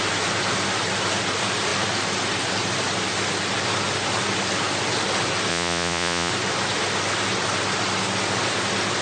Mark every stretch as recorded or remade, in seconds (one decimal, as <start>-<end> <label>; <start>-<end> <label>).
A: 0.0-5.5 recorded; 5.5-6.3 remade; 6.3-9.0 recorded